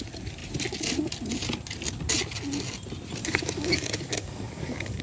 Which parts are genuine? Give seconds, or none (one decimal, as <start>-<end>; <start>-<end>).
0.0-3.2